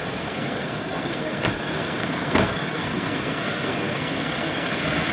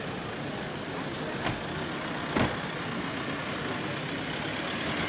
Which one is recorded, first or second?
second